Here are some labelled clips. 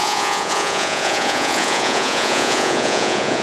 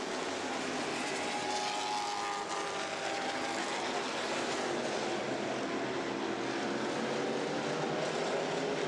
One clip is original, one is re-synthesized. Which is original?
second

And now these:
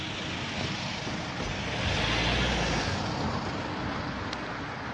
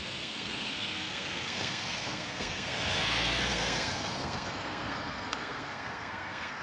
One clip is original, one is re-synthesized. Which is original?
first